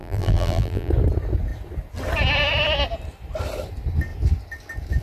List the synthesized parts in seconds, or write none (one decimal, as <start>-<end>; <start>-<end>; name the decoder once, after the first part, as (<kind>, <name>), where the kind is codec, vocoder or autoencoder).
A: 0.0-0.9 (vocoder, BigVGAN v2)

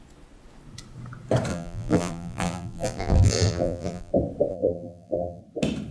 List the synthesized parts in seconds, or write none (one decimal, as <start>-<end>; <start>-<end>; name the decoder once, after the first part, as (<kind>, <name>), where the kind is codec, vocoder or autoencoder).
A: 1.5-4.1 (vocoder, BigVGAN v2); 4.5-5.4

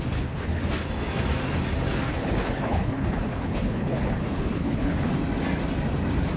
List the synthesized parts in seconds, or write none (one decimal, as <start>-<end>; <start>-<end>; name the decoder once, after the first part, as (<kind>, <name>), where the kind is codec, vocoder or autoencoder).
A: 0.0-0.6 (codec, HILCodec); 2.1-5.1

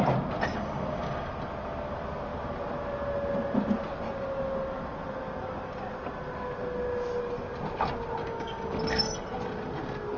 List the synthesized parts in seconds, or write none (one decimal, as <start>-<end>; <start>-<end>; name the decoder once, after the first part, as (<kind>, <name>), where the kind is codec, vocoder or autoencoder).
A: 0.5-1.3 (codec, DAC); 8.2-8.8

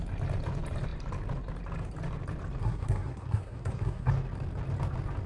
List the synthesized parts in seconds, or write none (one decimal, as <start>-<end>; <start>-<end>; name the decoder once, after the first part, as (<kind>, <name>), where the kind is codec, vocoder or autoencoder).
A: 2.6-4.1 (codec, SNAC)

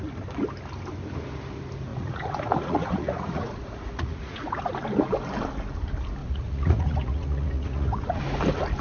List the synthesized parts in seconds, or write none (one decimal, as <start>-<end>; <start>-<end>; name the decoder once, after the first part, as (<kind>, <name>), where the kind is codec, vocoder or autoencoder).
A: 1.9-4.7 (vocoder, Vocos); 6.2-8.2